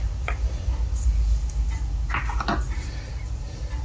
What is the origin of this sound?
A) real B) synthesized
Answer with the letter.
A